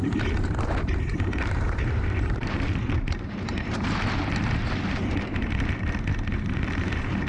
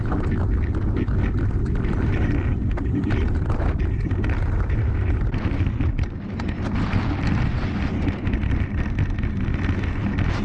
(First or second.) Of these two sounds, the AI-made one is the first